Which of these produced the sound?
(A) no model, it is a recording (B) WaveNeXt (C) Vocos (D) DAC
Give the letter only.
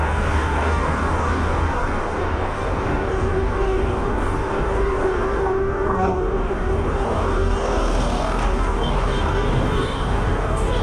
D